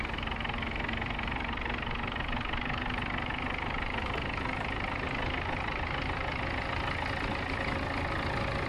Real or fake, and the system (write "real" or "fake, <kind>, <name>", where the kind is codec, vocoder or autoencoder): real